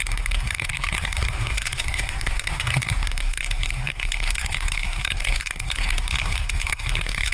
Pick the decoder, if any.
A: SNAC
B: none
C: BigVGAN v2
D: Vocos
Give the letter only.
A